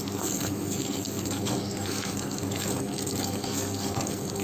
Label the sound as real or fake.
fake